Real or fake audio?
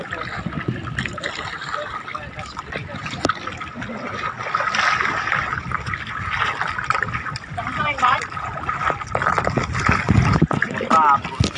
real